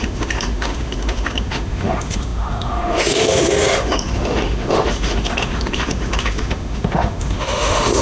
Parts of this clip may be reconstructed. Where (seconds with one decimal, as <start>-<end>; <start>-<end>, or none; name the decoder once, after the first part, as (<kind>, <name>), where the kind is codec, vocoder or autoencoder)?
0.0-8.0 (autoencoder, DAC-VAE)